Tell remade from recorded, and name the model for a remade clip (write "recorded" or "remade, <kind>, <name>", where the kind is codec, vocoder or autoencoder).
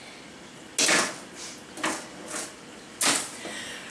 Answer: recorded